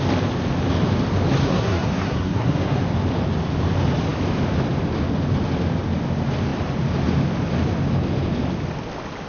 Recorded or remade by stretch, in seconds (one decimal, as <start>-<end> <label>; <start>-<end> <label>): 0.0-1.4 recorded; 1.4-2.8 remade; 2.8-9.3 recorded